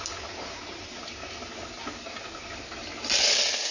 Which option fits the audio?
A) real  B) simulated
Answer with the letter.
A